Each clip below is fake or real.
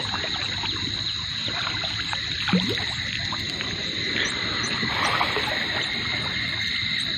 real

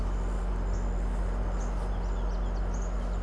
real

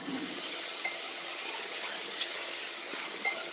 fake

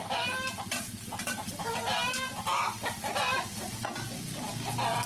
real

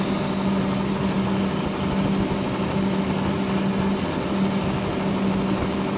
real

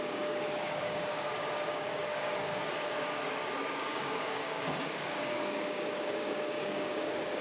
fake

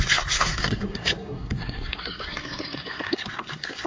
fake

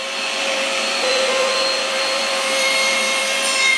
fake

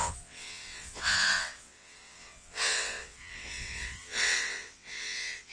fake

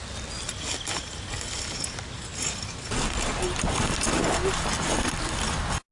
real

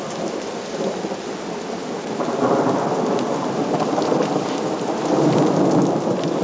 real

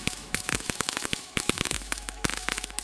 fake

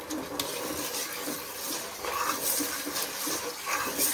real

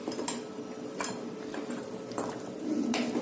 fake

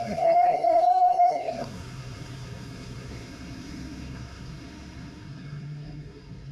fake